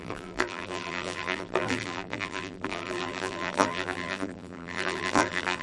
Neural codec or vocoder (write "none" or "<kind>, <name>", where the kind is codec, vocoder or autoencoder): vocoder, BigVGAN v2